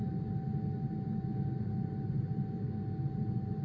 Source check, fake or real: real